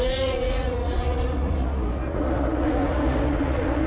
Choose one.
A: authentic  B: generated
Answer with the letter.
B